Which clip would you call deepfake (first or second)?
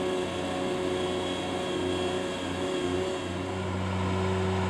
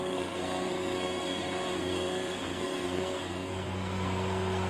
second